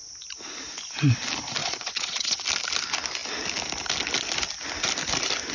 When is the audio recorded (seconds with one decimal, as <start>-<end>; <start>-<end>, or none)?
0.0-1.6; 2.4-5.5

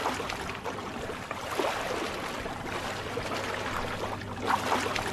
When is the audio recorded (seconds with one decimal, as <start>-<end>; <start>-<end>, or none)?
0.0-5.1

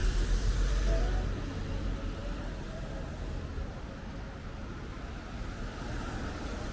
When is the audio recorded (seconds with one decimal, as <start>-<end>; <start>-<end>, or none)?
0.0-6.7

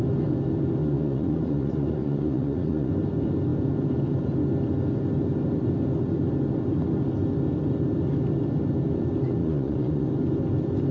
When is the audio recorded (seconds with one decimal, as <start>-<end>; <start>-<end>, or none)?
0.0-0.8; 2.9-9.4; 10.1-10.9

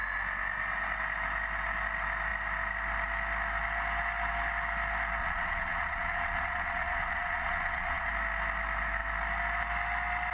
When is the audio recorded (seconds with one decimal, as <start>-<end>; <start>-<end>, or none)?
0.0-5.2; 8.1-10.3